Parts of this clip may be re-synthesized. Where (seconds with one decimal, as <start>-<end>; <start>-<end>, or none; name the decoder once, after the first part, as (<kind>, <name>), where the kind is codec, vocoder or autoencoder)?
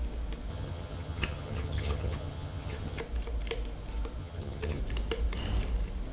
0.5-3.0 (vocoder, HiFi-GAN); 4.2-4.8